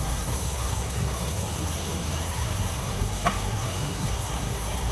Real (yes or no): no